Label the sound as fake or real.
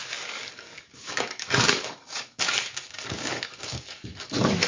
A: fake